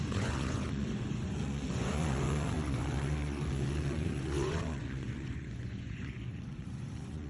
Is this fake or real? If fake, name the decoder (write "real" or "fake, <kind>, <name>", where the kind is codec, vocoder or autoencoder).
fake, vocoder, Vocos